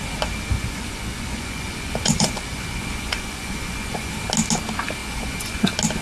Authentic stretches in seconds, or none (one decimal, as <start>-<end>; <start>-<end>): 0.0-0.5; 4.1-5.0; 5.6-6.0